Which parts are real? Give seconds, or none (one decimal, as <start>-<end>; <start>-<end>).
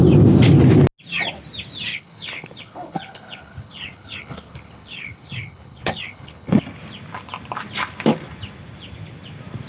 0.0-1.9; 6.6-9.7